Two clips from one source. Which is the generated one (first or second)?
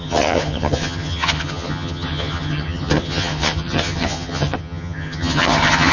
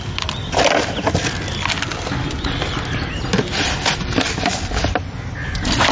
first